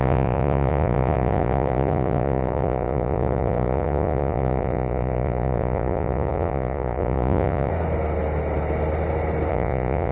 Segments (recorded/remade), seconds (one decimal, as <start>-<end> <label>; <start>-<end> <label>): 0.0-7.7 remade; 7.7-9.5 recorded; 9.5-10.1 remade